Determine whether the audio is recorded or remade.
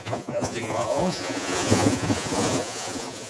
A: remade